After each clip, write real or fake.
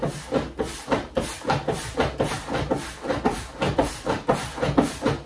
real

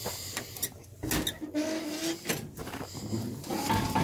real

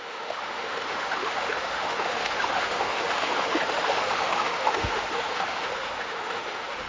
fake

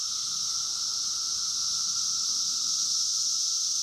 real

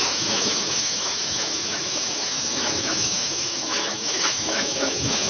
fake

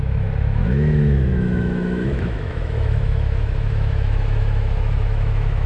fake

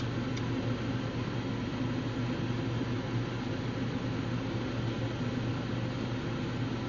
real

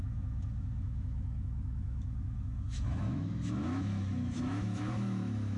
fake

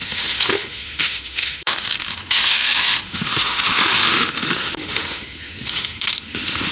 fake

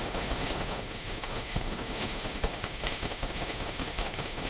fake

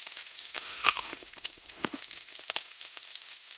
fake